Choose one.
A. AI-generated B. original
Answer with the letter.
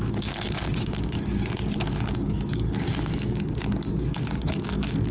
A